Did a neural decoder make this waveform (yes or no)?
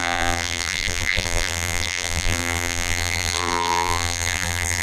yes